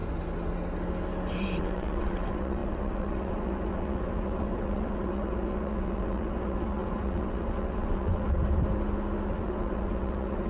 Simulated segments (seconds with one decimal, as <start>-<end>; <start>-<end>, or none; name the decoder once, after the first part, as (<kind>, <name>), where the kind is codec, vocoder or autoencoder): 1.6-8.4 (vocoder, WaveNeXt); 9.3-10.5